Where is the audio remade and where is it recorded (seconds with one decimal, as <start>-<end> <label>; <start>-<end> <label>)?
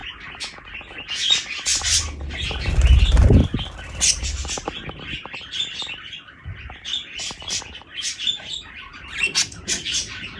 0.0-3.4 recorded; 3.4-7.6 remade; 7.6-8.9 recorded; 8.9-10.0 remade; 10.0-10.4 recorded